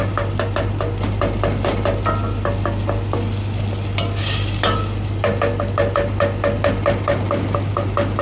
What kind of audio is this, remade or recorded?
recorded